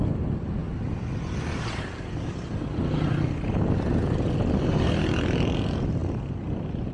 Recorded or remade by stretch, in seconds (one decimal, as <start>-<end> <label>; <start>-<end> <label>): 0.0-6.9 recorded